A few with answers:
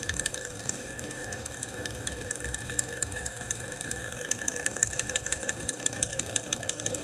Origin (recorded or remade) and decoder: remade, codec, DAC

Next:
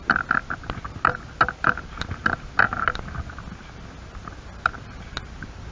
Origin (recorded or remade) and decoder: recorded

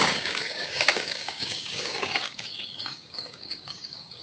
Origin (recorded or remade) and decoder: remade, codec, DAC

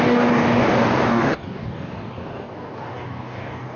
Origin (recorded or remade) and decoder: remade, codec, DAC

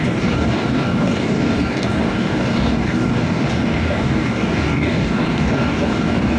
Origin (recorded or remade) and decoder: remade, codec, DAC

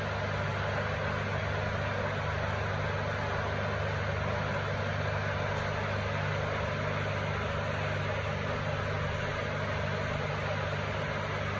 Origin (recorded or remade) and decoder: recorded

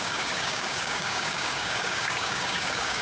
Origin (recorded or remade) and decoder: remade, codec, DAC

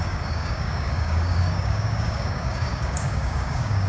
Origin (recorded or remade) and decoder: remade, codec, DAC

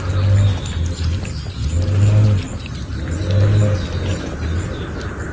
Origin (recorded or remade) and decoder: recorded